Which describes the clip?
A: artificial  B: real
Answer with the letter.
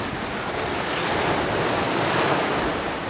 B